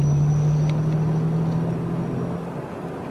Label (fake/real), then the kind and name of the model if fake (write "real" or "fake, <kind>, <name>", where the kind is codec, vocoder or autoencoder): real